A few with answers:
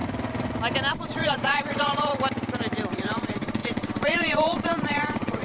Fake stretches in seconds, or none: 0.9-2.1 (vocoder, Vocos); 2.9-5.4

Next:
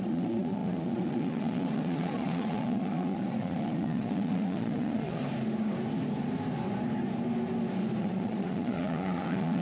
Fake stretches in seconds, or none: 0.0-5.2 (vocoder, Vocos); 8.0-9.6

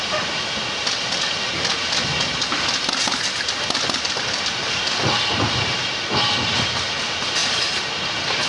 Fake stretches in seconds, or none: 7.4-8.5 (vocoder, BigVGAN v2)